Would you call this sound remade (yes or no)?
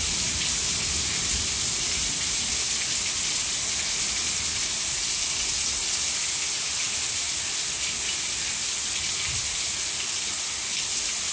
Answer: no